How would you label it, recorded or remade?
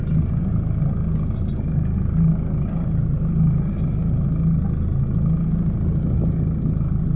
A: recorded